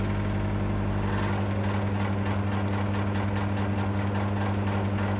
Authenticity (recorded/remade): recorded